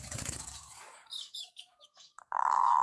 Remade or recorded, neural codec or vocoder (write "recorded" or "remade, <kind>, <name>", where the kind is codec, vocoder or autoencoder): remade, codec, DAC